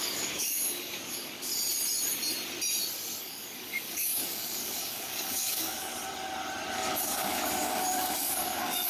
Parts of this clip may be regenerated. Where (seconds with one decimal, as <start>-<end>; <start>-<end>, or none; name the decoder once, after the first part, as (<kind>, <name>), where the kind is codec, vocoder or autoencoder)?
0.0-1.5 (codec, DAC); 3.2-5.9; 6.7-8.9